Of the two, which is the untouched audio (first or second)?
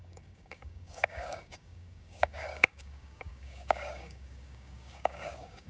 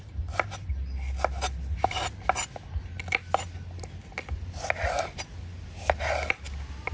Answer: second